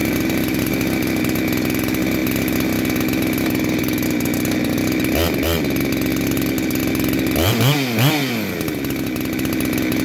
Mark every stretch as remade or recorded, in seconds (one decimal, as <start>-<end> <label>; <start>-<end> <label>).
0.0-0.7 remade; 0.7-10.0 recorded